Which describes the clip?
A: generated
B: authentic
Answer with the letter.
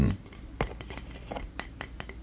B